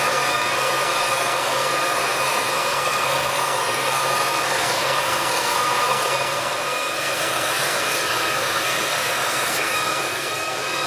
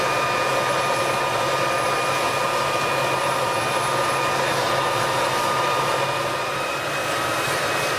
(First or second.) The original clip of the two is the second